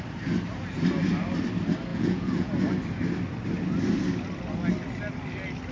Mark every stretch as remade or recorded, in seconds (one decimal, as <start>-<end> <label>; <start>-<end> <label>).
0.0-1.9 recorded; 1.9-2.5 remade; 2.5-5.7 recorded